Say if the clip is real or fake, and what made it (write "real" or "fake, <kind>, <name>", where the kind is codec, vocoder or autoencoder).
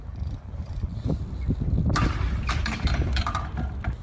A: fake, vocoder, BigVGAN v2